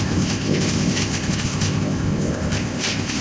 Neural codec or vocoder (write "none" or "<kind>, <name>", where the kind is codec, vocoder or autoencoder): codec, ZipCodec